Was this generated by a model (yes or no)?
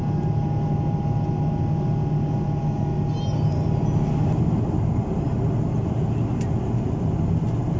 no